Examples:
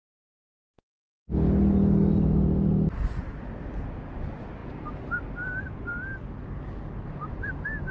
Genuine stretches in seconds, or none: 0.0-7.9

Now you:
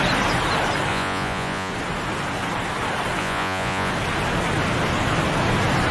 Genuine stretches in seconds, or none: 0.0-0.9; 1.7-3.2; 3.9-5.9

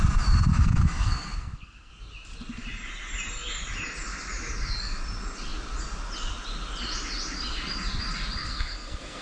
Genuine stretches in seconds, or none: 0.0-0.5; 1.9-8.4

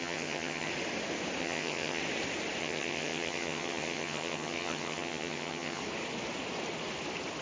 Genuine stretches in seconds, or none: 0.7-1.4; 2.0-2.6; 5.8-7.4

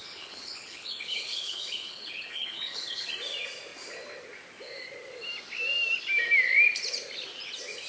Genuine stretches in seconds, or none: 3.1-7.9

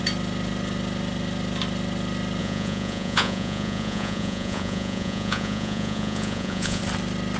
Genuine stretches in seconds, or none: 0.0-2.4; 6.8-7.4

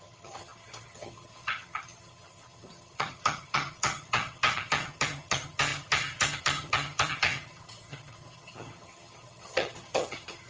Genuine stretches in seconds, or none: none